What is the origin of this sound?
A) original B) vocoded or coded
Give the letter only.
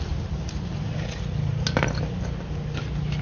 A